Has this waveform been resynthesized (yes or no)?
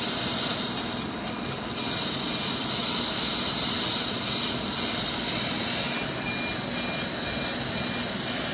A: no